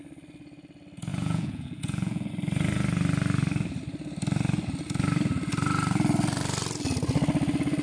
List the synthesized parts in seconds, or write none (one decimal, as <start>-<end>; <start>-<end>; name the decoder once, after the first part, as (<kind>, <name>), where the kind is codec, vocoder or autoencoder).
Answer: 1.1-2.3 (vocoder, Vocos)